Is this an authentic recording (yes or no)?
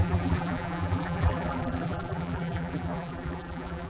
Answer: no